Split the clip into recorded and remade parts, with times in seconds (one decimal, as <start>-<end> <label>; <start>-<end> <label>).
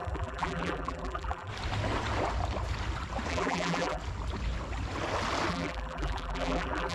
0.0-1.5 remade; 1.5-3.3 recorded; 3.3-4.0 remade; 4.0-5.5 recorded; 5.5-6.9 remade